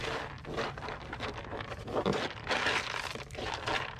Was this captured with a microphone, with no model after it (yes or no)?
yes